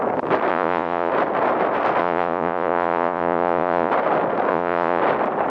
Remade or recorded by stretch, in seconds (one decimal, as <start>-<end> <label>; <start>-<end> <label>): 0.0-0.5 recorded; 0.5-1.1 remade; 1.1-2.0 recorded; 2.0-3.9 remade; 3.9-4.5 recorded; 4.5-5.0 remade; 5.0-5.5 recorded